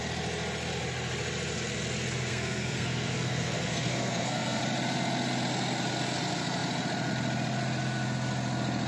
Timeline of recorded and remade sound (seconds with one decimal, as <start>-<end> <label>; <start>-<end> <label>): 0.0-2.3 recorded; 2.3-4.6 remade; 4.6-8.9 recorded